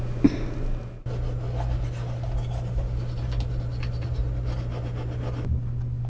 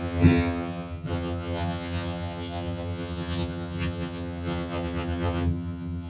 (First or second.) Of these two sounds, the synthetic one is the second